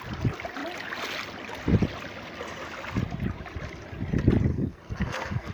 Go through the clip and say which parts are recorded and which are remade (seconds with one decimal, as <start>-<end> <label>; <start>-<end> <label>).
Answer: 0.0-4.5 recorded; 4.5-5.5 remade